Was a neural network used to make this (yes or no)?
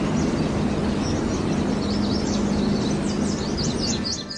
no